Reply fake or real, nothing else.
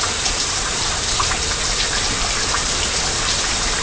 fake